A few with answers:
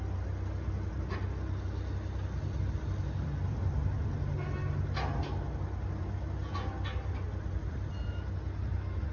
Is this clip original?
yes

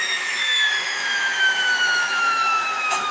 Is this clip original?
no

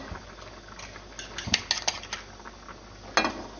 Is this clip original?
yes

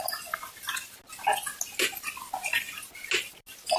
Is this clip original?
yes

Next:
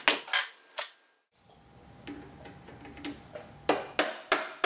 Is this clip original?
yes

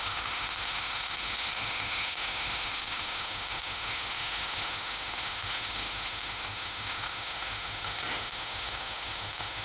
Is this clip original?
no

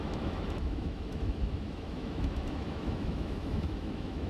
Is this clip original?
no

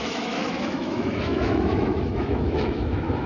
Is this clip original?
no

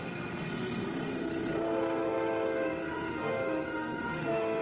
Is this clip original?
no